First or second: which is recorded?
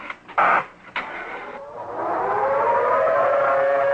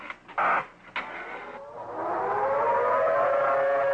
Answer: second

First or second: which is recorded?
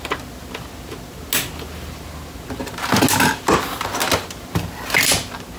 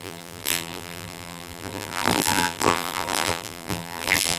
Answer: first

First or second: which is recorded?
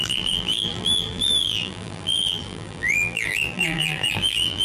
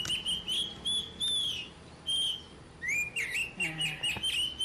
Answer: second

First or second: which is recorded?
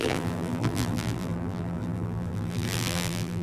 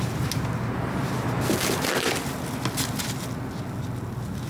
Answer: second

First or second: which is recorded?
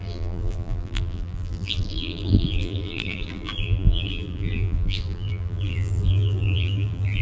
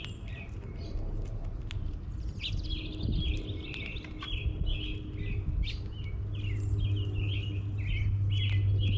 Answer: second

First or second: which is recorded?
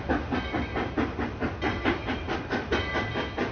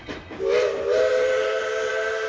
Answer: first